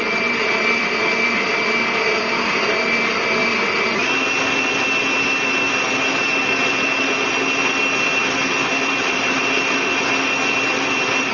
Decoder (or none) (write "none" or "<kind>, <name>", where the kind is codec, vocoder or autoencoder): none